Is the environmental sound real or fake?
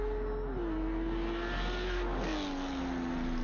real